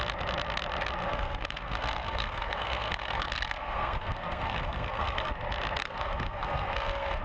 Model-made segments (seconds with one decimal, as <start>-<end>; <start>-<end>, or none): 1.0-5.3; 5.8-7.2